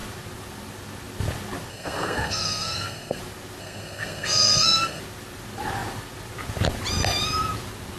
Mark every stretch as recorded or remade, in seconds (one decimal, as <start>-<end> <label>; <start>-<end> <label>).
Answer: 0.0-1.7 recorded; 1.7-3.2 remade; 3.2-3.6 recorded; 3.6-5.0 remade; 5.0-8.0 recorded